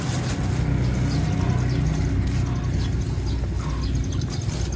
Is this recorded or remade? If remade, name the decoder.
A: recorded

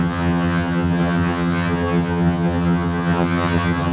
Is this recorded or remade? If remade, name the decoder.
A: remade, vocoder, HiFi-GAN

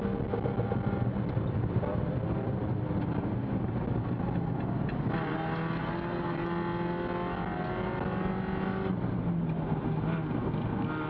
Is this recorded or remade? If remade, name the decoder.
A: recorded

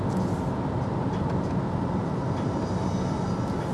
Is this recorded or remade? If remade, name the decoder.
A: recorded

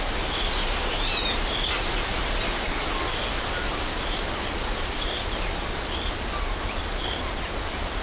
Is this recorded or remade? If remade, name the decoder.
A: recorded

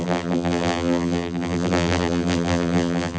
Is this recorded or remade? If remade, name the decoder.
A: remade, vocoder, BigVGAN v2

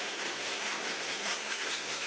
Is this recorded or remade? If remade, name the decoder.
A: remade, codec, SNAC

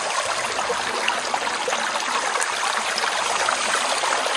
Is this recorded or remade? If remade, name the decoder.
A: recorded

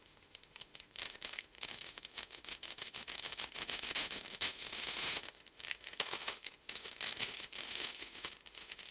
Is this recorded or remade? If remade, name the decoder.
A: remade, autoencoder, DAC-VAE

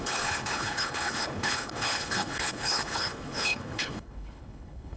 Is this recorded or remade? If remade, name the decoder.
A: remade, codec, HILCodec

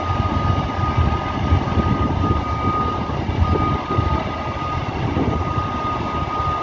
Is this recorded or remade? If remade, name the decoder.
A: recorded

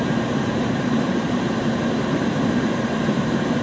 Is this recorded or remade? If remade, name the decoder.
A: remade, vocoder, BigVGAN v2